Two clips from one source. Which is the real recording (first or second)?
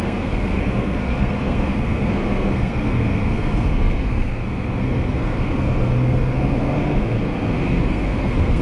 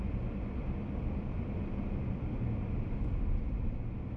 second